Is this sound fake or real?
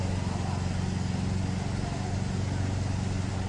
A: real